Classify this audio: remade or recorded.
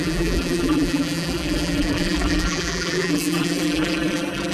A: remade